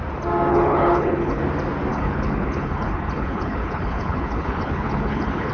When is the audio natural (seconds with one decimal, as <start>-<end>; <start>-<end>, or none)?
0.0-0.5; 1.4-1.9